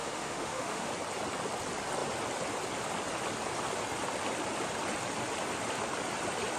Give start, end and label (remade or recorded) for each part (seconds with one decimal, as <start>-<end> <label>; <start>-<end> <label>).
0.0-0.9 remade; 0.9-6.6 recorded